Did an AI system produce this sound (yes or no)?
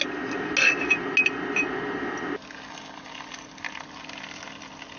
no